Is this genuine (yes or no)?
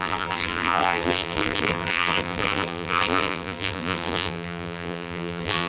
no